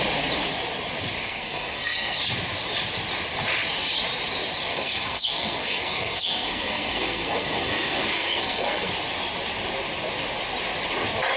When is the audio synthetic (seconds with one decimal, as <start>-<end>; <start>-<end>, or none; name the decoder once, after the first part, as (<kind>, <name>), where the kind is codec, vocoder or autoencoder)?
1.2-2.2 (codec, SNAC); 4.7-8.9